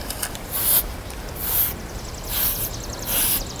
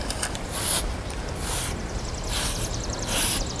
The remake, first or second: second